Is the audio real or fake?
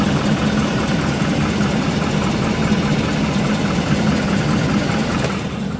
real